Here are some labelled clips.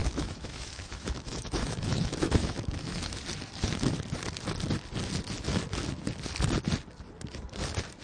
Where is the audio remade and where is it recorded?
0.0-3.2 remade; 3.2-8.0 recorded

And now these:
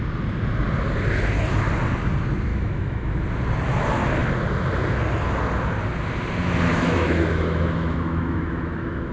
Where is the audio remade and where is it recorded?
0.0-2.5 recorded; 2.5-3.1 remade; 3.1-6.7 recorded; 6.7-9.1 remade

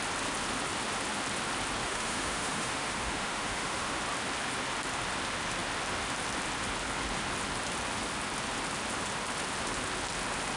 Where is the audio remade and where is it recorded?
0.0-1.8 recorded; 1.8-4.0 remade; 4.0-10.6 recorded